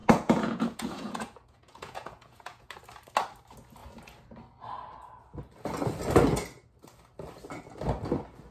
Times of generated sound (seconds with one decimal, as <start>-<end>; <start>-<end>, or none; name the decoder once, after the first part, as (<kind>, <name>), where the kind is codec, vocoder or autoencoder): 0.0-2.7 (vocoder, Vocos)